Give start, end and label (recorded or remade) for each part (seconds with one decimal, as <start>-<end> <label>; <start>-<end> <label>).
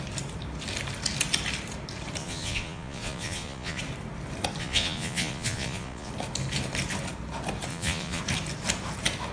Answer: 0.0-2.2 recorded; 2.2-3.8 remade; 3.8-4.6 recorded; 4.6-6.1 remade; 6.1-7.7 recorded; 7.7-8.2 remade; 8.2-9.3 recorded